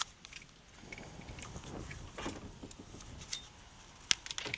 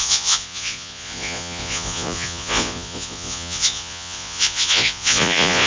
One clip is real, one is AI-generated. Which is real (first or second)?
first